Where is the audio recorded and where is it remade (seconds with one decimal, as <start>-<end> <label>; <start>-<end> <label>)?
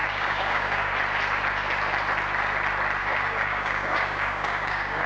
0.0-0.9 remade; 0.9-3.0 recorded; 3.0-5.1 remade